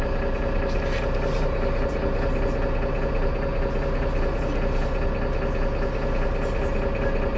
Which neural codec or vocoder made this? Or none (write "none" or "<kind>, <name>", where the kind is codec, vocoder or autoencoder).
none